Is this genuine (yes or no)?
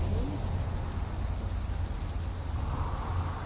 yes